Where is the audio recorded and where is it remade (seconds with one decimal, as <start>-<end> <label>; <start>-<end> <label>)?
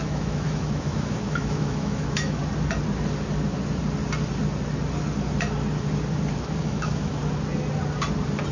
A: 0.0-2.4 remade; 2.4-6.6 recorded; 6.6-7.2 remade; 7.2-8.5 recorded